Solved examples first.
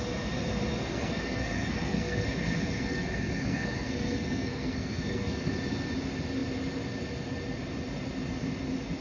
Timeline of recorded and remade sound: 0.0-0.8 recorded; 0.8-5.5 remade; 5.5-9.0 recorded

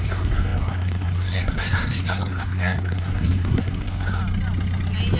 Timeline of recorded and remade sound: 0.0-4.2 remade; 4.2-5.2 recorded

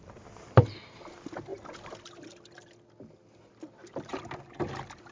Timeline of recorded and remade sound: 0.0-5.1 recorded

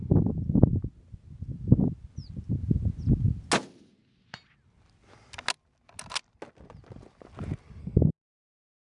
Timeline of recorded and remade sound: 0.0-7.8 recorded; 7.8-9.0 remade

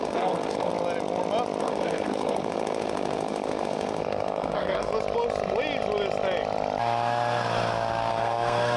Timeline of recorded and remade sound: 0.0-0.7 remade; 0.7-1.6 recorded; 1.6-4.9 remade; 4.9-8.1 recorded; 8.1-8.8 remade

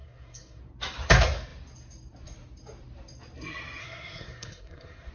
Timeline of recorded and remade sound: 0.0-0.6 remade; 0.6-3.8 recorded; 3.8-5.1 remade

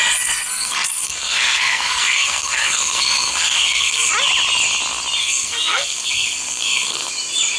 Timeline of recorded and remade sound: 0.0-4.1 remade; 4.1-5.2 recorded; 5.2-7.1 remade; 7.1-7.6 recorded

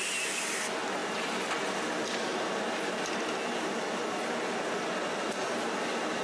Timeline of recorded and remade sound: 0.0-6.2 recorded